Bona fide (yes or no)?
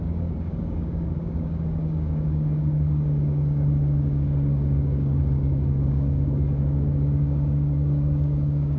no